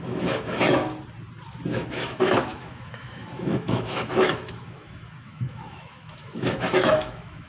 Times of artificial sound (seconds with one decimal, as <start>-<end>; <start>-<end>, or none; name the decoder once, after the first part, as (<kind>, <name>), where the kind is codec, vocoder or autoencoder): 0.0-0.8 (autoencoder, DAC-VAE); 1.7-7.5